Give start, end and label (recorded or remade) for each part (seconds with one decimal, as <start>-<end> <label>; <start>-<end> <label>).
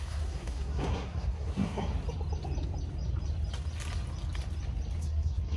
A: 0.0-1.9 remade; 1.9-5.0 recorded; 5.0-5.6 remade